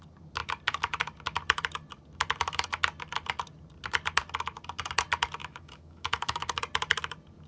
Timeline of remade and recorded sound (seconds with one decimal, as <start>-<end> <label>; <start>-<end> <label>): 0.0-5.4 recorded; 5.4-6.6 remade; 6.6-7.5 recorded